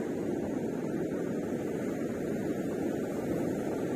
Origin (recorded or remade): recorded